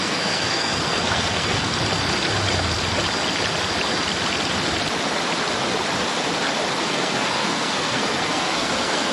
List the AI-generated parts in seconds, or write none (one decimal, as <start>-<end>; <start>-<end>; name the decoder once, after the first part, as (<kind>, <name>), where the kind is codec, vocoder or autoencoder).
0.0-1.7 (codec, SNAC); 6.8-9.1